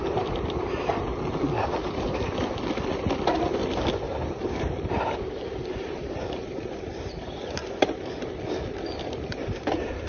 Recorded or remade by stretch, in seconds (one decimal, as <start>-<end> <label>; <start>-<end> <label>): 0.0-1.1 remade; 1.1-4.3 recorded; 4.3-7.6 remade; 7.6-9.7 recorded; 9.7-10.1 remade